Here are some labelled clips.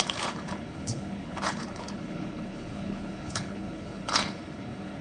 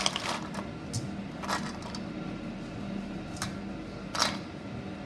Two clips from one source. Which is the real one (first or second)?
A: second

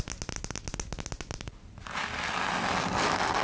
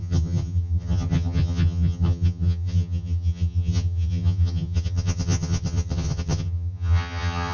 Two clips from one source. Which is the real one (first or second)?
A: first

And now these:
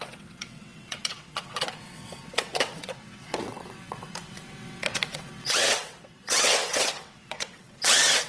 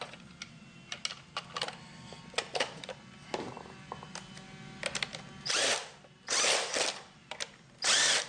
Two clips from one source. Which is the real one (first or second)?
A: second